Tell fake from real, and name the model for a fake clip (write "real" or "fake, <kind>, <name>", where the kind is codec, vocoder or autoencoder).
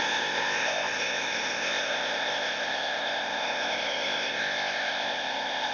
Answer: fake, codec, ZipCodec